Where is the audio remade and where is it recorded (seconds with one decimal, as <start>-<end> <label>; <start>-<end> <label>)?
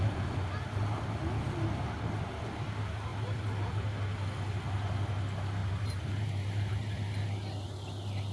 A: 0.0-3.1 recorded; 3.1-3.9 remade; 3.9-5.6 recorded; 5.6-6.7 remade; 6.7-8.3 recorded